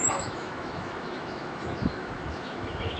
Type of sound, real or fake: fake